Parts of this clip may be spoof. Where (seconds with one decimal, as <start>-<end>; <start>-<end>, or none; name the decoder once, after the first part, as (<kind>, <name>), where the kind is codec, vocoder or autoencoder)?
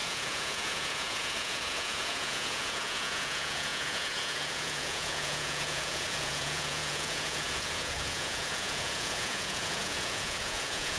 0.0-11.0 (vocoder, Vocos)